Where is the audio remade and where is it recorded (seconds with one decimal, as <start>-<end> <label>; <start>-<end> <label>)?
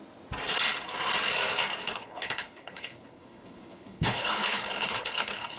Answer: 0.0-1.8 recorded; 1.8-5.6 remade